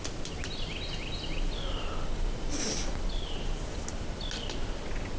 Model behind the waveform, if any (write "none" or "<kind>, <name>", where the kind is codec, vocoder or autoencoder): none